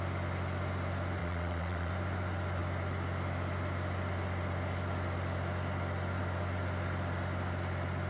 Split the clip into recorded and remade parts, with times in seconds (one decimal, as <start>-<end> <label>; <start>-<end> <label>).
0.0-1.2 recorded; 1.2-1.9 remade; 1.9-8.1 recorded